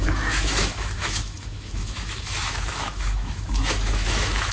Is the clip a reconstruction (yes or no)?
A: yes